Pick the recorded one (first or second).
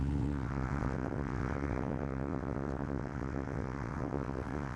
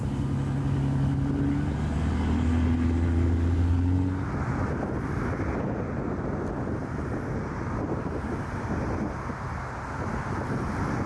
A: second